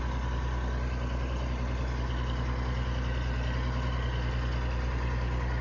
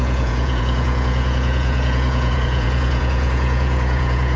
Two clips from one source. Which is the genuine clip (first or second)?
first